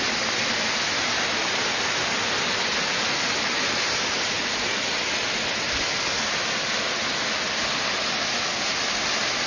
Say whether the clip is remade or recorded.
recorded